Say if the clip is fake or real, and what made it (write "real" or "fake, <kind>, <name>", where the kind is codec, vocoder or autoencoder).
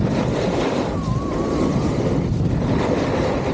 fake, vocoder, BigVGAN v2